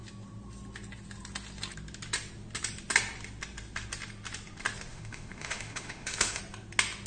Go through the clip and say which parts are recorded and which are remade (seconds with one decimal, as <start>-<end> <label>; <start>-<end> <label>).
0.0-4.9 recorded; 4.9-6.4 remade; 6.4-7.1 recorded